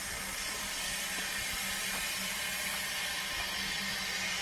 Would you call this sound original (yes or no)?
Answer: yes